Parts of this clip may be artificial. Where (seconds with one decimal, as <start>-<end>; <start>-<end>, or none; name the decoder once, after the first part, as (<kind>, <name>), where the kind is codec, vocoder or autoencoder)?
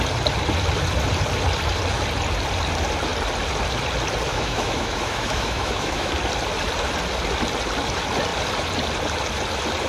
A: 4.3-6.1 (autoencoder, DAC-VAE)